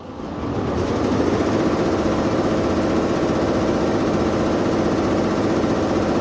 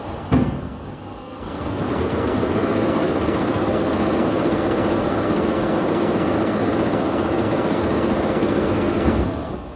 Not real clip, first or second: second